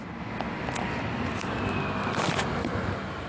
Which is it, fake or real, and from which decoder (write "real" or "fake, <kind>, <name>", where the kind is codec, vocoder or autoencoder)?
real